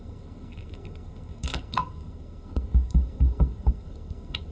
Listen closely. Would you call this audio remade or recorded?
remade